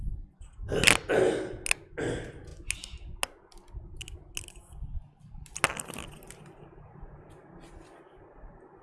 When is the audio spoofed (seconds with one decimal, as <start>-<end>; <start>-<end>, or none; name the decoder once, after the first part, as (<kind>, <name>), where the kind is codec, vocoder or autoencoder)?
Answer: none